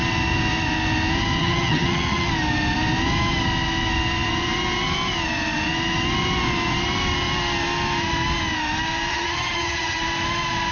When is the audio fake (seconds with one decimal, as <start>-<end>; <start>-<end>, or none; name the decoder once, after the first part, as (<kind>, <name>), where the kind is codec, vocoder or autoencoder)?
1.4-2.3 (vocoder, HiFi-GAN); 9.1-10.0